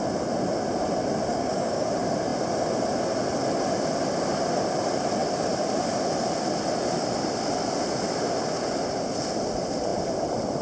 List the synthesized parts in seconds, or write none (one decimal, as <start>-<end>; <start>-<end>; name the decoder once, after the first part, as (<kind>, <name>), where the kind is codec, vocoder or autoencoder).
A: 1.3-1.9 (codec, DAC)